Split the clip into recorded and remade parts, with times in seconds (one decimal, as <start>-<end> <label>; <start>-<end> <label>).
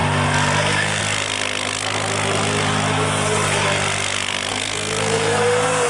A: 0.0-0.6 recorded; 0.6-1.0 remade; 1.0-4.5 recorded; 4.5-5.9 remade